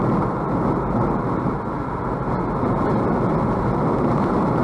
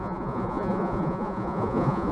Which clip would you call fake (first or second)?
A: second